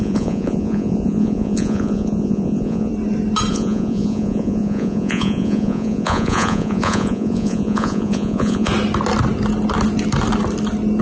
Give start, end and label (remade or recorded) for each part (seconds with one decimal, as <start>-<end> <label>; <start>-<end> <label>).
0.0-2.9 remade; 2.9-3.5 recorded; 3.5-8.7 remade; 8.7-11.0 recorded